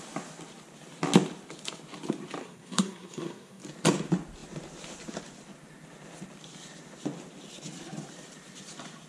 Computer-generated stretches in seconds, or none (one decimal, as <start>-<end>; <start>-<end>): 2.4-3.6